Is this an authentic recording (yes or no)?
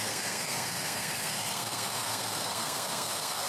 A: no